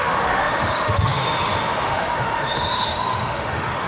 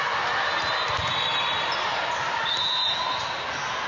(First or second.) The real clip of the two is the second